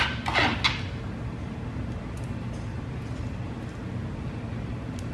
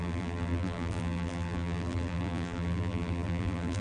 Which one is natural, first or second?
first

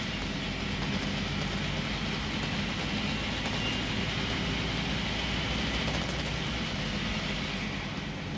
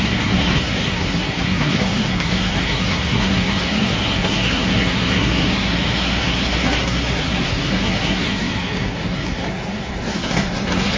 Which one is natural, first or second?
first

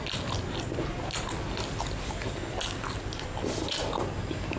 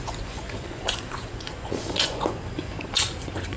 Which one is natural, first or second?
first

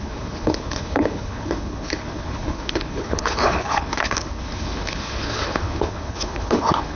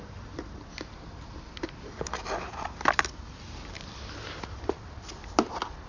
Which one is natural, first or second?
second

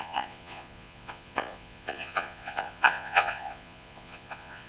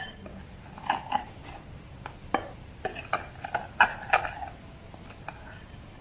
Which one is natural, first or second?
second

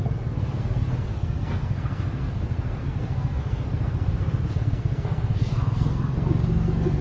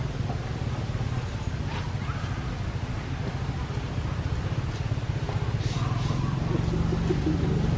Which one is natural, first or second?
second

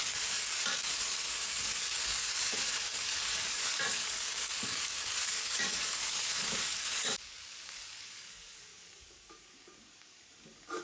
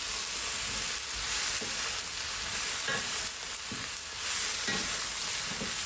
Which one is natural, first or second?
second